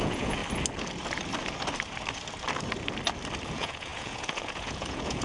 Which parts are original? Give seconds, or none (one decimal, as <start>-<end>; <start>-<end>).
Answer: 0.4-3.5

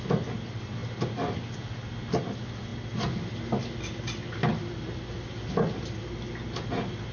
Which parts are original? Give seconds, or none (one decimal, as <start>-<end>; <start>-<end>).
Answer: 0.0-7.1

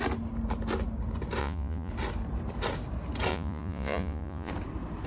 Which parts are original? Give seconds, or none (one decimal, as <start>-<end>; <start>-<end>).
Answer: 0.0-1.4; 1.9-3.3; 4.5-5.1

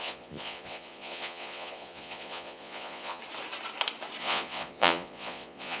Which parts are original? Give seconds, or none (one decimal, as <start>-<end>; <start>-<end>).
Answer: 3.2-4.2

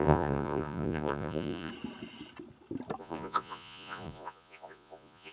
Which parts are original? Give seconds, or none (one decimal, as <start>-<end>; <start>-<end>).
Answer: 1.7-3.0

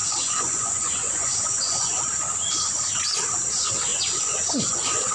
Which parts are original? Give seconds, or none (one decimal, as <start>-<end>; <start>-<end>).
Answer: 2.0-3.9

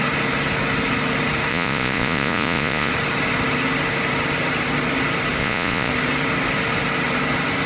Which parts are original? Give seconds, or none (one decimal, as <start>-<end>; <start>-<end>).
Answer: 0.0-1.5; 2.9-5.4; 5.9-7.7